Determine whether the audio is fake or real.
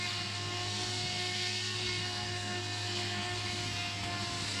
fake